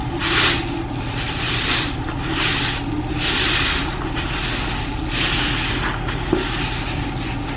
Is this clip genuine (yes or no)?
yes